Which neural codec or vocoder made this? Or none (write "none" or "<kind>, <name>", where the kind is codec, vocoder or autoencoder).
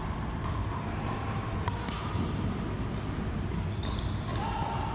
none